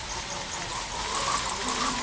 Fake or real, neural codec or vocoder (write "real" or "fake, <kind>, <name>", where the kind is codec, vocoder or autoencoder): real